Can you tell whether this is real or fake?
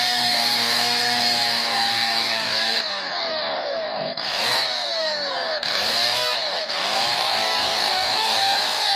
fake